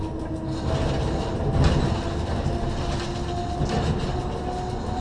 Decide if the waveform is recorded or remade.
recorded